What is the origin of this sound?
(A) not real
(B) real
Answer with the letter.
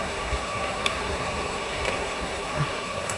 A